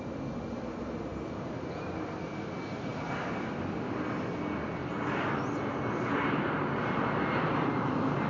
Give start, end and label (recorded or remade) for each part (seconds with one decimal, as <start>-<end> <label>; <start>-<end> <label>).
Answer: 0.0-8.3 recorded